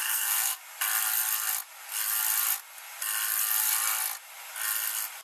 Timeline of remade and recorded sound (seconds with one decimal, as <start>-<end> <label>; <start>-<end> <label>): 0.0-0.6 remade; 0.6-5.2 recorded

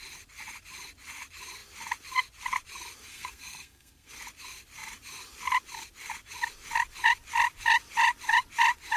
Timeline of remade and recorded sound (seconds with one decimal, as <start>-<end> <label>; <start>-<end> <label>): 0.0-3.1 recorded; 3.1-4.1 remade; 4.1-9.0 recorded